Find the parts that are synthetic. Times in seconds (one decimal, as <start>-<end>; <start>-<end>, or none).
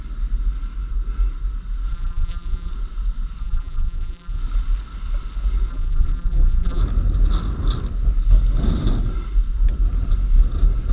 1.9-2.7; 3.4-4.4; 5.7-6.8